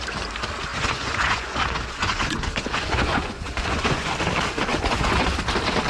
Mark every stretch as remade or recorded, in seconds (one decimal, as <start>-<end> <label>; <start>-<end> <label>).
0.0-0.7 recorded; 0.7-4.1 remade; 4.1-4.7 recorded; 4.7-5.4 remade; 5.4-5.9 recorded